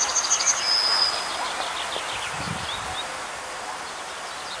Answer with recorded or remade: recorded